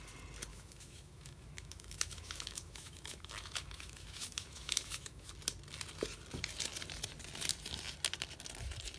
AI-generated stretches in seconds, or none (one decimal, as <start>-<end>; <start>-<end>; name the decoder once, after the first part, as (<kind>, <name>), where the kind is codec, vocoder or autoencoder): 0.5-5.3 (autoencoder, DAC-VAE)